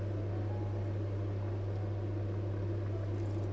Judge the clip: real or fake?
real